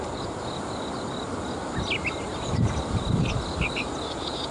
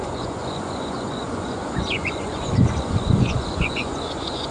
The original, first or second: first